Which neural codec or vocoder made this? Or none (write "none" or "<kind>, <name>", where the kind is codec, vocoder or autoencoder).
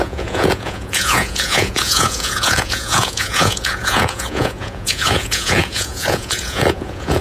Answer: vocoder, Vocos